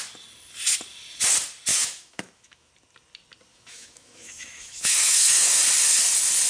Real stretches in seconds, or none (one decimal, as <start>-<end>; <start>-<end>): 0.0-1.7; 2.7-3.5; 5.6-6.5